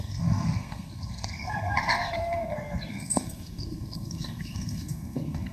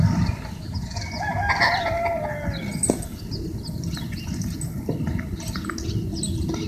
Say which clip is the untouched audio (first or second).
second